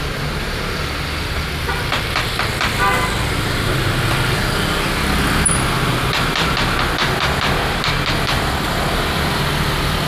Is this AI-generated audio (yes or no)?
no